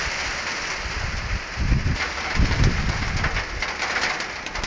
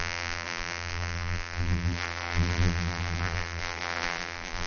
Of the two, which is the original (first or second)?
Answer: first